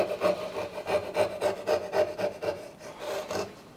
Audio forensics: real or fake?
real